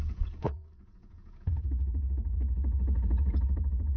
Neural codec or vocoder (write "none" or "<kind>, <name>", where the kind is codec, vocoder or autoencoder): vocoder, Vocos